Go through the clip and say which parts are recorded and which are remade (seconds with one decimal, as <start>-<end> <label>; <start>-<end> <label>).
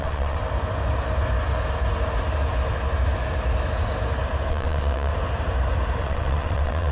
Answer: 0.0-0.4 remade; 0.4-4.5 recorded; 4.5-5.1 remade; 5.1-6.0 recorded; 6.0-6.9 remade